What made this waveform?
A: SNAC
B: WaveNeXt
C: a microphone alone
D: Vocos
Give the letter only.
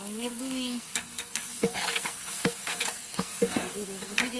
A